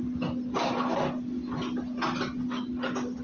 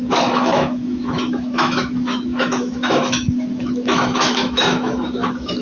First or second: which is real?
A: first